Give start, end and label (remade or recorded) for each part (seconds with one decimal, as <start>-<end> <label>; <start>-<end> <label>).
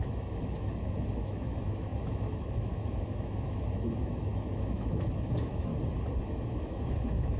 0.0-5.7 remade; 5.7-6.3 recorded; 6.3-7.4 remade